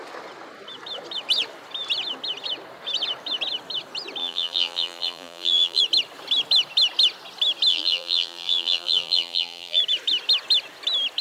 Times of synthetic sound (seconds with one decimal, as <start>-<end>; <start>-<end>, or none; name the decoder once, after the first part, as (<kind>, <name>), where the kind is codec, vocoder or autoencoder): 4.2-5.8 (vocoder, BigVGAN v2); 7.7-9.8